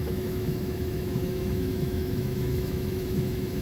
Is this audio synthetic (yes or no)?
yes